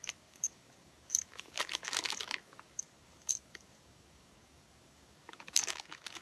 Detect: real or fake fake